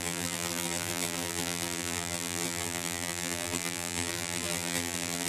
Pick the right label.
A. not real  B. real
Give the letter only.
A